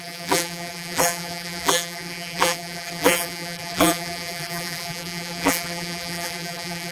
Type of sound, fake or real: fake